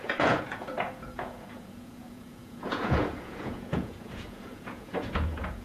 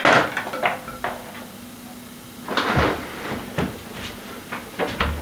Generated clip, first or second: first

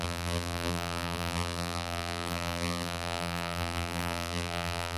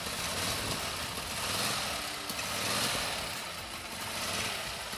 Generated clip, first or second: first